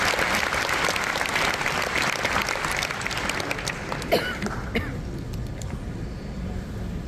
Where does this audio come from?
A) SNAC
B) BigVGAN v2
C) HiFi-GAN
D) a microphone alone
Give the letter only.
D